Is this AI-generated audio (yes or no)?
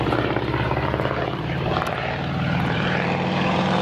yes